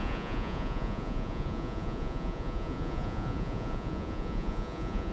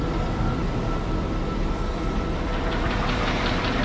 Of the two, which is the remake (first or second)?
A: first